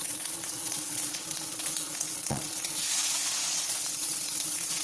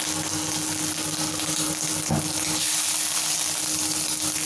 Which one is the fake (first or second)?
first